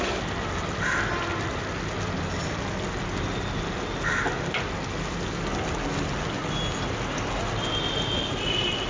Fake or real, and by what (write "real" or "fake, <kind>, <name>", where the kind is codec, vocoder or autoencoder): real